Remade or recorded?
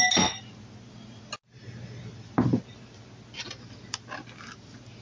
recorded